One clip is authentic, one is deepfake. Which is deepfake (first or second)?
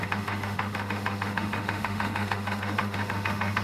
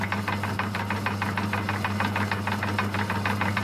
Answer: first